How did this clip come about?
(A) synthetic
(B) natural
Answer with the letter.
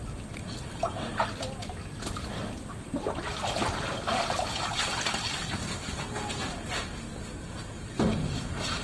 B